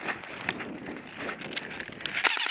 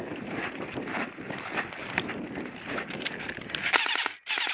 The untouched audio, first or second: first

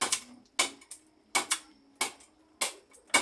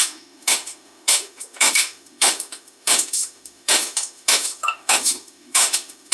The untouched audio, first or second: first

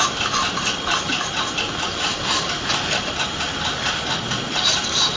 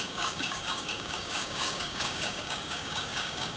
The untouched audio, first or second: first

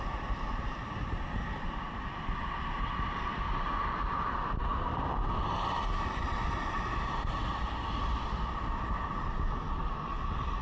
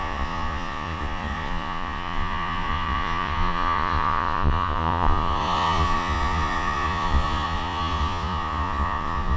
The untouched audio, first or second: first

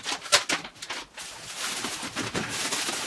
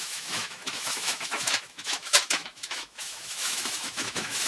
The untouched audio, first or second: first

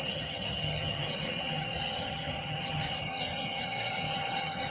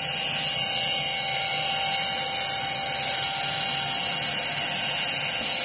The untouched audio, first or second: second